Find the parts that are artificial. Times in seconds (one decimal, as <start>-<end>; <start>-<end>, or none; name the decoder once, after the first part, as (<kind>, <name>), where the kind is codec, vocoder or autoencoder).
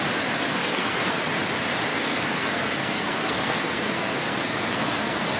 0.6-1.2 (codec, SNAC); 1.9-5.4